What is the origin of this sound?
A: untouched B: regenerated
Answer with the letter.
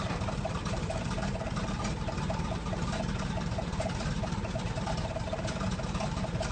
B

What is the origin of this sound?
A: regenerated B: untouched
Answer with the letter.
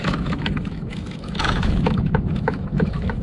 A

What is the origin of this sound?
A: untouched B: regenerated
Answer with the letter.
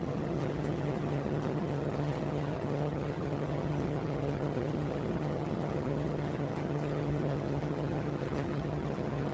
B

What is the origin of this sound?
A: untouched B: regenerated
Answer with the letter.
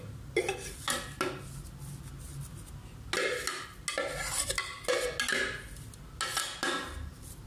A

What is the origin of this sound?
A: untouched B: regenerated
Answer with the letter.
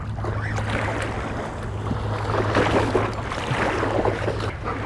A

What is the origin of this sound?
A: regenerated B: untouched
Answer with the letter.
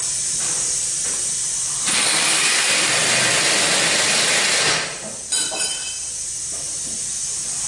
B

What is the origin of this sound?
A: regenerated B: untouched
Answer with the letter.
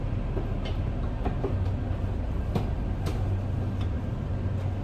B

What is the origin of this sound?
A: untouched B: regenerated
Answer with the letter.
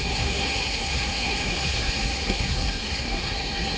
B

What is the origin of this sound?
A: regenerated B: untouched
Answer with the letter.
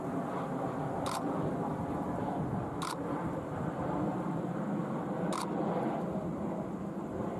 B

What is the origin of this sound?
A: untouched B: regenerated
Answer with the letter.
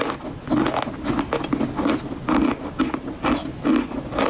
A